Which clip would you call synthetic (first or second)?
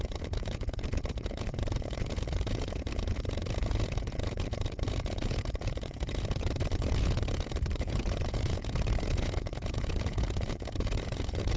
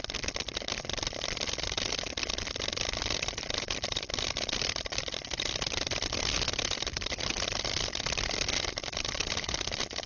first